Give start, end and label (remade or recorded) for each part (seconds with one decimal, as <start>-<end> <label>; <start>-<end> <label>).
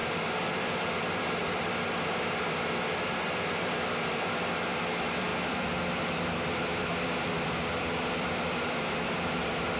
0.0-9.8 remade